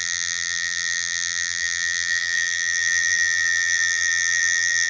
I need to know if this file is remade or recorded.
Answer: remade